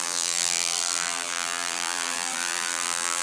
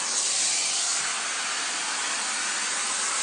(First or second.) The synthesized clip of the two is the first